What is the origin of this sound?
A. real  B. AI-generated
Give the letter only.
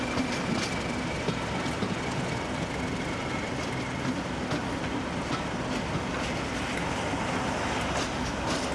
A